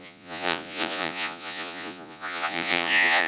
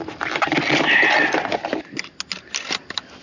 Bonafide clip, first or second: second